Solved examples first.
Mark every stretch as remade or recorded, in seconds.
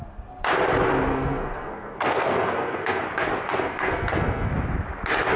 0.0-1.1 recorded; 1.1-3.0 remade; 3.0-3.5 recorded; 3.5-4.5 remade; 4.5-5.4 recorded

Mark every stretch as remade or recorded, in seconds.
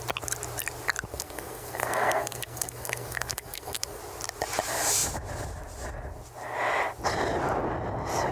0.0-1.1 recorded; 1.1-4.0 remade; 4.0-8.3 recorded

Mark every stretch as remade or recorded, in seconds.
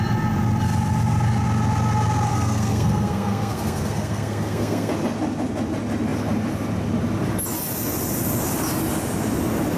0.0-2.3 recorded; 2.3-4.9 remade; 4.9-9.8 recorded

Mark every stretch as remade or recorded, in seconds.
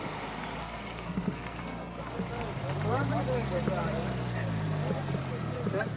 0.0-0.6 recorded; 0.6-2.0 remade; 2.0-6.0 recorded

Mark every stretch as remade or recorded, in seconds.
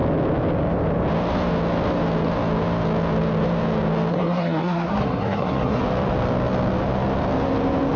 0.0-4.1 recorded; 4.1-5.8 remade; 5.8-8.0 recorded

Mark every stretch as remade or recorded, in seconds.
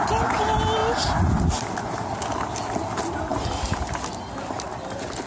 0.0-5.3 recorded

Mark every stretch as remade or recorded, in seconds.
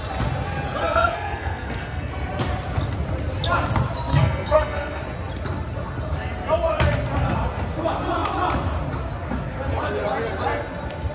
0.0-0.8 recorded; 0.8-2.1 remade; 2.1-4.1 recorded; 4.1-5.0 remade; 5.0-11.1 recorded